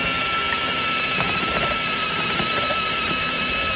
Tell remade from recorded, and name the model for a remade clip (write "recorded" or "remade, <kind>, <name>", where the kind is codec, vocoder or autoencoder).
recorded